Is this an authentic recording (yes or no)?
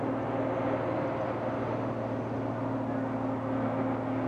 yes